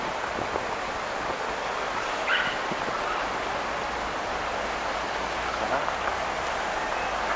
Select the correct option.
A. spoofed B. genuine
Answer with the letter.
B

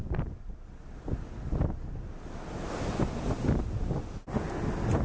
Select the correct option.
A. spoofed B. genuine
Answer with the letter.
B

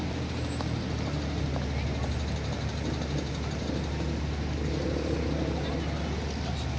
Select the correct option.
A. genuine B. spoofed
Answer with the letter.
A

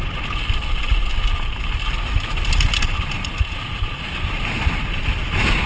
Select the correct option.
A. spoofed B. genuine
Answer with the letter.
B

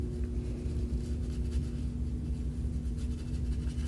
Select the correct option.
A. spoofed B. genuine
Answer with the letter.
B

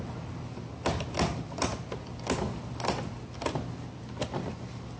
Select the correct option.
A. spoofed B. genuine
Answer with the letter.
B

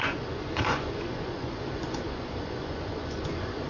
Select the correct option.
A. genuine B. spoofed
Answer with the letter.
B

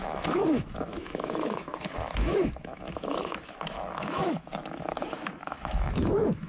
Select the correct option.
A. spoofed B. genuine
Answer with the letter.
A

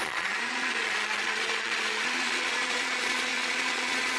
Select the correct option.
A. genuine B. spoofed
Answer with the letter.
B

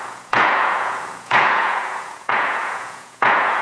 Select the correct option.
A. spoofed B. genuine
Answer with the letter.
A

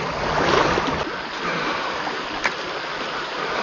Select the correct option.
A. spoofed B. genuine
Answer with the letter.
B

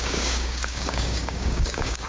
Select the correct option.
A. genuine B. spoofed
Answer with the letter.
B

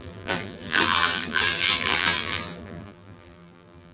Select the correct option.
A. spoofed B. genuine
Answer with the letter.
A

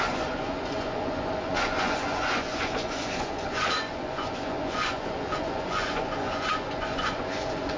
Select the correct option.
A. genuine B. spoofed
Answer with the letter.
B